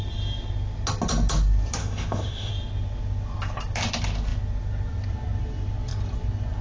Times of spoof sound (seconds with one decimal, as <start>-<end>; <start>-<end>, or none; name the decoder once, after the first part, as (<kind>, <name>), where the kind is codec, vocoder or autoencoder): 1.8-2.5 (autoencoder, DAC-VAE)